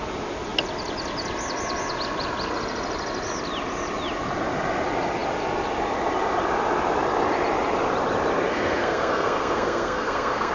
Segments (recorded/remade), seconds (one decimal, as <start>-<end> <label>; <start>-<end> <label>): 0.0-8.5 recorded; 8.5-10.5 remade